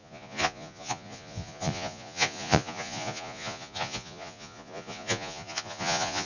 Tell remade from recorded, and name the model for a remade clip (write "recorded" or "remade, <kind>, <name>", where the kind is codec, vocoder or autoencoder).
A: remade, vocoder, Vocos